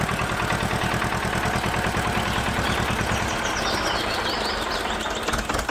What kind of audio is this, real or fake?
real